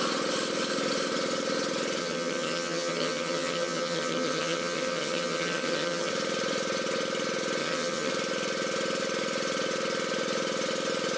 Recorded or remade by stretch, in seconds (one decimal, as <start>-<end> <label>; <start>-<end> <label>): 0.0-2.0 recorded; 2.0-6.1 remade; 6.1-7.6 recorded; 7.6-8.1 remade; 8.1-11.2 recorded